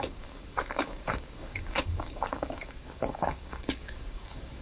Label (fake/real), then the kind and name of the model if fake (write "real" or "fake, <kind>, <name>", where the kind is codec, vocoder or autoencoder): fake, codec, DAC